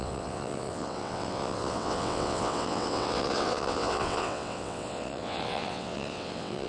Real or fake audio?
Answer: fake